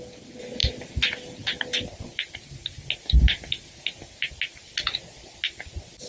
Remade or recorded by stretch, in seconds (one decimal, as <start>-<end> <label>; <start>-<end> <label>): 0.0-6.1 recorded